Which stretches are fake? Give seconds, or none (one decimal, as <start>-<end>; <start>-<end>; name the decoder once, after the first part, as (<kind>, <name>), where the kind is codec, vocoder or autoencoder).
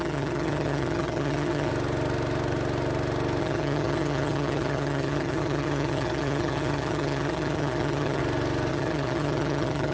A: 0.0-1.7 (vocoder, HiFi-GAN); 3.4-8.2; 8.7-9.9